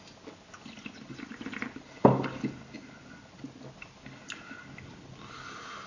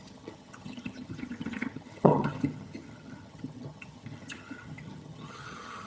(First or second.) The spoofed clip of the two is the second